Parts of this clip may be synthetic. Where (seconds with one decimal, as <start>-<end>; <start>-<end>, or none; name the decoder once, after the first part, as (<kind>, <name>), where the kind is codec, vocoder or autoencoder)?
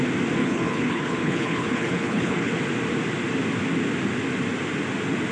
0.4-2.5 (codec, HILCodec)